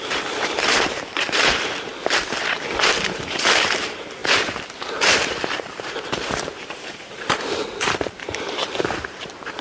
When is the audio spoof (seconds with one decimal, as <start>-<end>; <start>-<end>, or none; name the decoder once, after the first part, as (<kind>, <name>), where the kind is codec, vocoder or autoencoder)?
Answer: 0.0-1.9 (vocoder, BigVGAN v2); 2.8-9.6